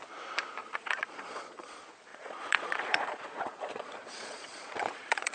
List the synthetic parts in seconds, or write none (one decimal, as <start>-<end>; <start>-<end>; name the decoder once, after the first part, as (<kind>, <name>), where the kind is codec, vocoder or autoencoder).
0.6-1.7 (vocoder, Vocos); 2.1-5.3